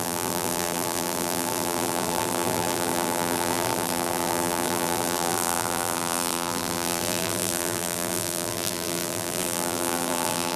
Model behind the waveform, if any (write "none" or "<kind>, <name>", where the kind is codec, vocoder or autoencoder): vocoder, BigVGAN v2